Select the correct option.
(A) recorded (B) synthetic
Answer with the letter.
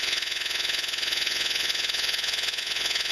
B